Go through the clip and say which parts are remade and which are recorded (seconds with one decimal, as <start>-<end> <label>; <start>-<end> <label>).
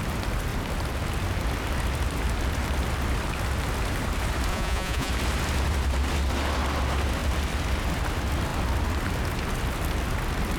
0.0-4.5 recorded; 4.5-5.1 remade; 5.1-10.6 recorded